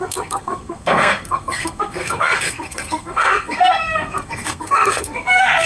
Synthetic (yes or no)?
yes